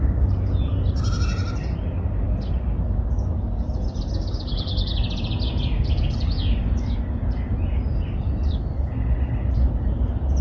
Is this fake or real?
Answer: real